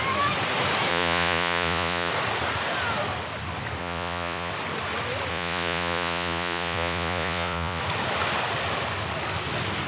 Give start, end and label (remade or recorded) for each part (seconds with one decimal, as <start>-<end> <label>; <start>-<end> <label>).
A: 0.0-0.9 recorded; 0.9-2.1 remade; 2.1-3.8 recorded; 3.8-4.5 remade; 4.5-5.3 recorded; 5.3-7.8 remade; 7.8-9.9 recorded